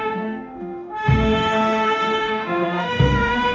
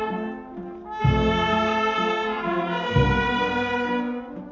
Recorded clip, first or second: second